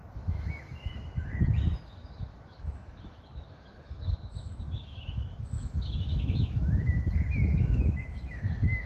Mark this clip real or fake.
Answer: fake